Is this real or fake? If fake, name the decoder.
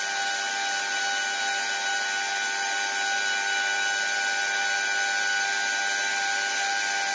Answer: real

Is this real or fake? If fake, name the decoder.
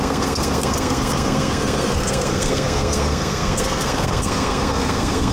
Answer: fake, codec, SNAC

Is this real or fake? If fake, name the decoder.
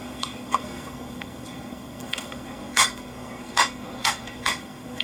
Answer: fake, codec, SNAC